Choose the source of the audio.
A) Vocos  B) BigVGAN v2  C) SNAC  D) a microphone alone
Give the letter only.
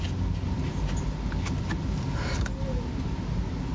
D